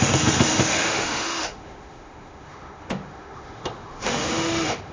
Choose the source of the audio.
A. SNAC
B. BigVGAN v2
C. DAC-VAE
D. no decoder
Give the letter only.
C